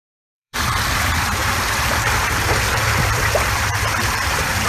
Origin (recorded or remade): remade